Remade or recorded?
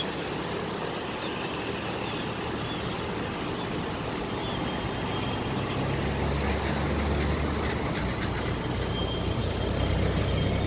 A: recorded